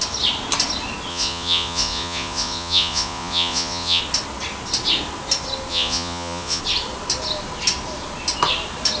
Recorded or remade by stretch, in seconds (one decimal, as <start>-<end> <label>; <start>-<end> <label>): 0.0-1.1 recorded; 1.1-4.0 remade; 4.0-5.7 recorded; 5.7-6.6 remade; 6.6-9.0 recorded